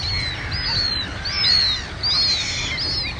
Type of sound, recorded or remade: recorded